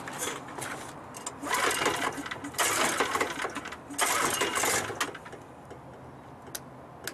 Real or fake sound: real